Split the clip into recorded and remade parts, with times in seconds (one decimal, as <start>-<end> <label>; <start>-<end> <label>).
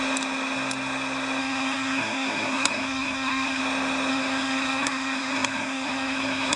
0.0-1.4 recorded; 1.4-3.6 remade; 3.6-4.1 recorded; 4.1-6.6 remade